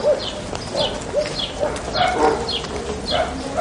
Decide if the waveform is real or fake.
real